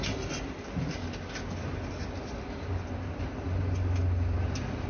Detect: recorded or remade recorded